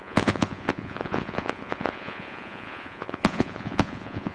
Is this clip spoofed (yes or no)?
yes